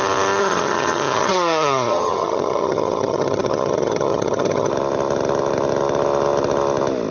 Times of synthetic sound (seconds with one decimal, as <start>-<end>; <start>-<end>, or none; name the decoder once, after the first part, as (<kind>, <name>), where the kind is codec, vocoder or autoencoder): 0.4-4.7 (vocoder, HiFi-GAN)